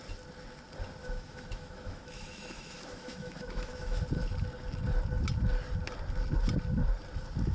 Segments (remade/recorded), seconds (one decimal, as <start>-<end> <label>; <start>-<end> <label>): 0.0-1.0 recorded; 1.0-4.0 remade; 4.0-7.5 recorded